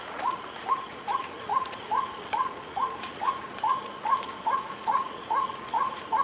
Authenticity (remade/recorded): remade